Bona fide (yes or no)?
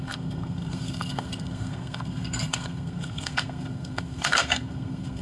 no